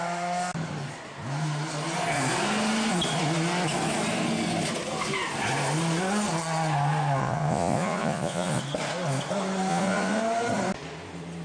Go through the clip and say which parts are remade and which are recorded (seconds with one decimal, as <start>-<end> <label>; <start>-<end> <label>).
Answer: 0.0-7.2 recorded; 7.2-8.6 remade; 8.6-9.7 recorded; 9.7-10.2 remade; 10.2-11.4 recorded